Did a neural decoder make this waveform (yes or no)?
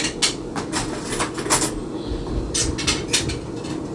no